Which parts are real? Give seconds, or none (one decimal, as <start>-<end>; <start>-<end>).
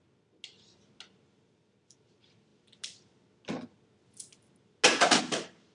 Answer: 0.0-5.7